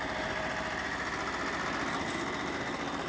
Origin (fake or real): real